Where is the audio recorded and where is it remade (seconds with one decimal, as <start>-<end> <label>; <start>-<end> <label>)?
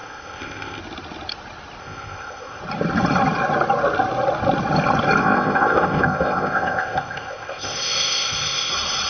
0.0-0.8 remade; 0.8-1.8 recorded; 1.8-2.6 remade; 2.6-5.2 recorded; 5.2-8.7 remade; 8.7-9.1 recorded